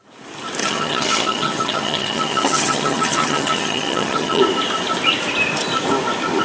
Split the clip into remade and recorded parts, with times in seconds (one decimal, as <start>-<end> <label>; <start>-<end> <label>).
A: 0.0-0.6 recorded; 0.6-4.4 remade; 4.4-6.4 recorded

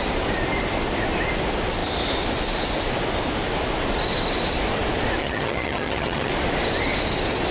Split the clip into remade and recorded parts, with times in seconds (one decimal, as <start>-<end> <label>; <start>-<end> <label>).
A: 0.0-5.2 recorded; 5.2-6.3 remade; 6.3-7.5 recorded

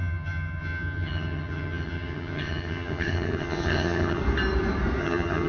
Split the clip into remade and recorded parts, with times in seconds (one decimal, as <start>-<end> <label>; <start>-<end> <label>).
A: 0.0-4.2 remade; 4.2-5.0 recorded; 5.0-5.5 remade

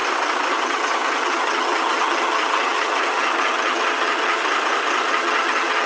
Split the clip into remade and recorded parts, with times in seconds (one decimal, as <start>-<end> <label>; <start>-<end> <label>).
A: 0.0-0.5 recorded; 0.5-4.4 remade; 4.4-5.1 recorded; 5.1-5.9 remade

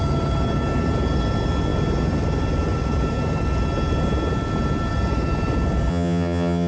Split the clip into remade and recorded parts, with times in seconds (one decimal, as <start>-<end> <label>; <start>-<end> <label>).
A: 0.0-5.9 recorded; 5.9-6.7 remade

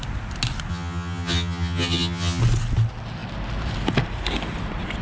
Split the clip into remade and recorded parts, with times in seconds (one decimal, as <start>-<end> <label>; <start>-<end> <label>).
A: 0.0-0.7 recorded; 0.7-2.4 remade; 2.4-5.0 recorded

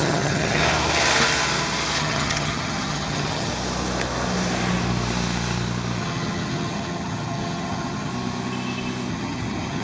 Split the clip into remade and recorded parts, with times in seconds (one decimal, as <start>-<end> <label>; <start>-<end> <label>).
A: 0.0-0.6 remade; 0.6-2.0 recorded; 2.0-3.5 remade; 3.5-6.0 recorded; 6.0-8.1 remade; 8.1-9.1 recorded; 9.1-9.8 remade

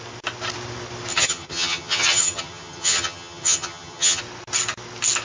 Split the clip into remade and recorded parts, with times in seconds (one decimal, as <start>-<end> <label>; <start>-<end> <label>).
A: 0.0-1.1 recorded; 1.1-4.2 remade; 4.2-5.2 recorded